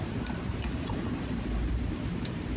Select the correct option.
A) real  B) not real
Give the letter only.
B